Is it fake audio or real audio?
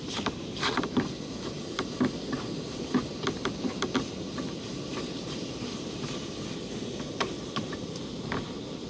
real